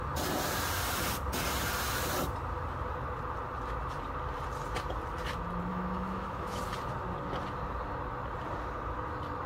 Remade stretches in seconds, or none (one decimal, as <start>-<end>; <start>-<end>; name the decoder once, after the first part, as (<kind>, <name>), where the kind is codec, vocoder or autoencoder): 5.7-6.6 (autoencoder, DAC-VAE)